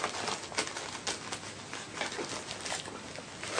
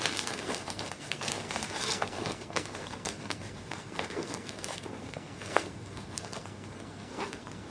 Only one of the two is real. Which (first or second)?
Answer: first